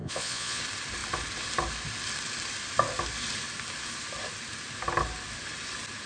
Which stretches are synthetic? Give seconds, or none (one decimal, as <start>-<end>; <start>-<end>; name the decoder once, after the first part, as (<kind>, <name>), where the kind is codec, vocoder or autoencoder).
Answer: 0.0-0.6 (vocoder, Vocos)